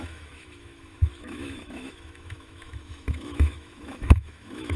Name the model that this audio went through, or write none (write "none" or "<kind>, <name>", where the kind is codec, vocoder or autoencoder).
autoencoder, DAC-VAE